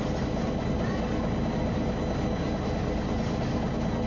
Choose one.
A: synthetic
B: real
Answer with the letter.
B